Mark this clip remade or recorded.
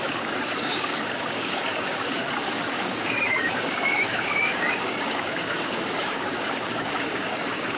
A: remade